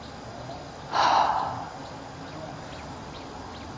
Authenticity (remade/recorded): recorded